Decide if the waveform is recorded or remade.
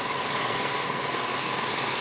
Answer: remade